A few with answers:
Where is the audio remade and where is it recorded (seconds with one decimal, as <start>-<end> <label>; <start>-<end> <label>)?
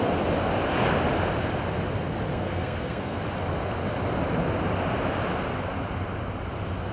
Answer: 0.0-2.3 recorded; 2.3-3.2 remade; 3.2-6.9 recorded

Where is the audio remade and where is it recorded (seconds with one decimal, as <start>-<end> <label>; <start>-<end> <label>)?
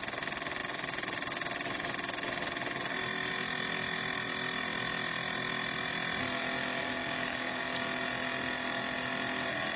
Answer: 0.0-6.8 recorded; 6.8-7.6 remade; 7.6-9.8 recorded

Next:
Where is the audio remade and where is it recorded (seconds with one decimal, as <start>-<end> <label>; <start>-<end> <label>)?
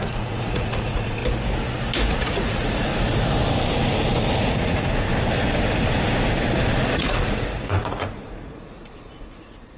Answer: 0.0-1.2 remade; 1.2-2.1 recorded; 2.1-2.9 remade; 2.9-4.4 recorded; 4.4-5.1 remade; 5.1-6.8 recorded; 6.8-9.8 remade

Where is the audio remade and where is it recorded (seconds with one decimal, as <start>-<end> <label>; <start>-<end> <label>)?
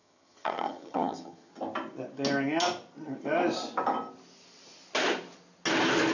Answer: 0.0-1.5 remade; 1.5-6.1 recorded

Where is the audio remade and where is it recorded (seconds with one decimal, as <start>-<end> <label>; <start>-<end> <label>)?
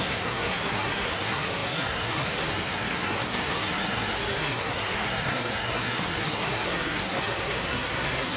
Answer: 0.0-8.4 remade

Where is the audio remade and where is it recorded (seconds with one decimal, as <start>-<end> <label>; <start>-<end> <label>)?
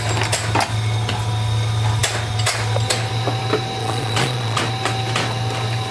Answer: 0.0-3.8 recorded; 3.8-4.6 remade; 4.6-5.9 recorded